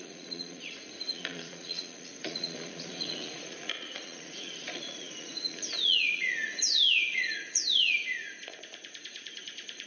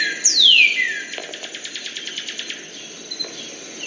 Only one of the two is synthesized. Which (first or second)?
first